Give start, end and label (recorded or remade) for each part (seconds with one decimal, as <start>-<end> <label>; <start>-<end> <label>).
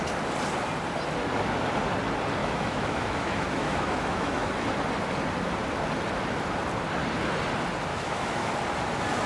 0.0-2.4 recorded; 2.4-4.5 remade; 4.5-7.9 recorded; 7.9-8.5 remade; 8.5-9.3 recorded